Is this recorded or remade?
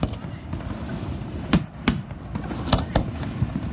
recorded